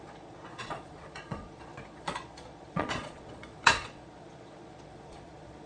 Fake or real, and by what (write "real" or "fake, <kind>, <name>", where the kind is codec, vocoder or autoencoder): fake, vocoder, Vocos